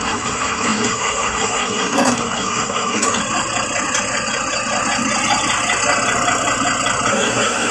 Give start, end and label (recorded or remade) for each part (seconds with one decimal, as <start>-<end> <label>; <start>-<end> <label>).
0.0-3.2 remade; 3.2-7.1 recorded; 7.1-7.7 remade